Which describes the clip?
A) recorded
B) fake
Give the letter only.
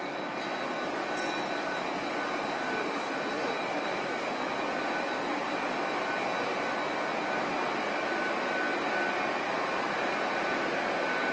A